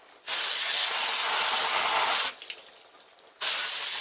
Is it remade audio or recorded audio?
recorded